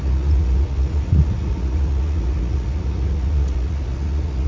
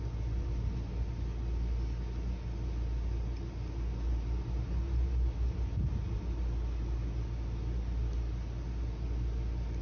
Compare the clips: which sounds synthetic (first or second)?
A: first